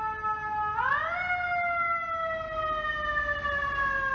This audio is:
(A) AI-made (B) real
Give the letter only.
B